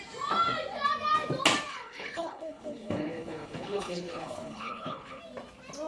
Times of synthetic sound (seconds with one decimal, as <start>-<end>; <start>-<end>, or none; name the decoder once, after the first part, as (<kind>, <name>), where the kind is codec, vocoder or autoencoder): 1.7-5.2 (codec, HILCodec)